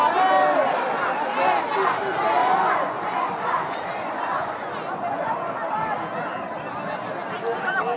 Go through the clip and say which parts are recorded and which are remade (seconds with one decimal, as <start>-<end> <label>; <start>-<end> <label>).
0.0-2.4 recorded; 2.4-5.3 remade; 5.3-8.0 recorded